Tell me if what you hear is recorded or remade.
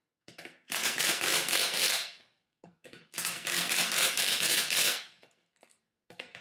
remade